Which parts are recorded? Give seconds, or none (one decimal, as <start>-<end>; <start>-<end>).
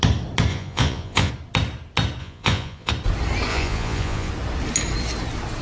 0.0-0.5; 1.3-2.2; 2.9-3.5; 4.3-5.6